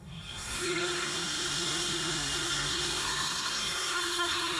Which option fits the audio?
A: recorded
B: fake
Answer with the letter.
B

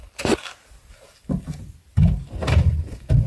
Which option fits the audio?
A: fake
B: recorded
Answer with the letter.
B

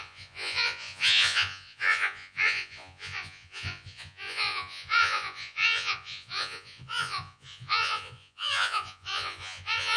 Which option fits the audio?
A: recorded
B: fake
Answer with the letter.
B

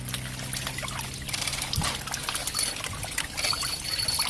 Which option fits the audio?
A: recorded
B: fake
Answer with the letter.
A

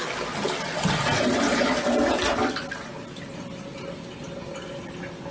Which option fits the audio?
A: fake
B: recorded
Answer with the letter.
B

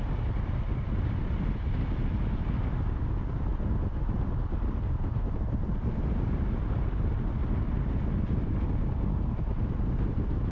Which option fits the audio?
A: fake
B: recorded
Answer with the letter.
B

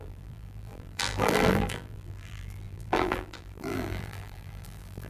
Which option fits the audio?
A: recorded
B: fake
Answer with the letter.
B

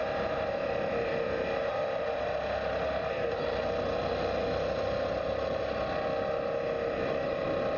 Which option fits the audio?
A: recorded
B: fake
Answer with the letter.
A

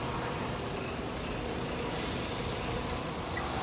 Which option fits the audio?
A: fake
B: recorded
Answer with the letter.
B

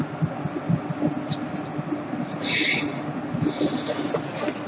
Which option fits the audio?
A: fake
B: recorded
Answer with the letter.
B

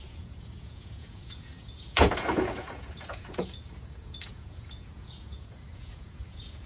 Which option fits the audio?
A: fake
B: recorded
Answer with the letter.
A